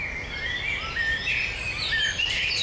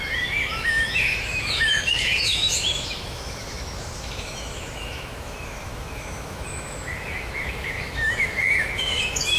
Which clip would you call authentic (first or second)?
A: first